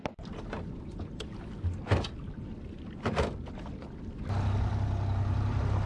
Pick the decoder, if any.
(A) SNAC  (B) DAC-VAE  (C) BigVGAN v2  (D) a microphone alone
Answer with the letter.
D